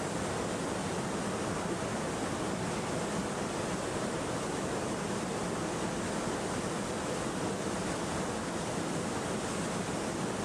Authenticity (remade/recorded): recorded